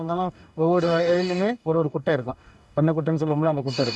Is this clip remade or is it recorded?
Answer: remade